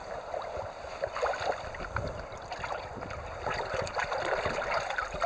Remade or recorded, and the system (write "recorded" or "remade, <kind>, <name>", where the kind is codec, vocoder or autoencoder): recorded